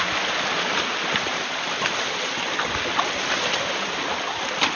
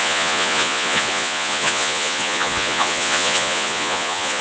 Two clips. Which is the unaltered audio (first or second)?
first